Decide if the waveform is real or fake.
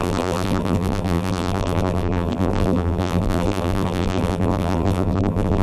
fake